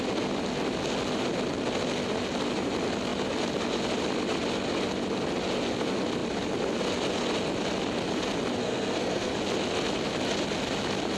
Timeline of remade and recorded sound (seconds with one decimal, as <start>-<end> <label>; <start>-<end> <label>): 0.0-8.6 recorded; 8.6-9.3 remade; 9.3-11.2 recorded